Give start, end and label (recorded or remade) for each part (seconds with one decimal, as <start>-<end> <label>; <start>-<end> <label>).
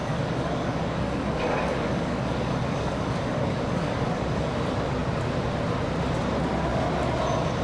0.0-4.5 remade; 4.5-7.6 recorded